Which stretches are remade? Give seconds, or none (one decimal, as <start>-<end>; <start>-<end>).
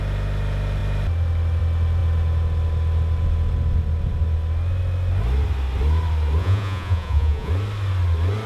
6.4-7.5